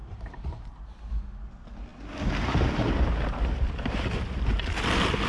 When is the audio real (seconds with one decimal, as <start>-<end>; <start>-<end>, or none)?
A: 0.9-5.3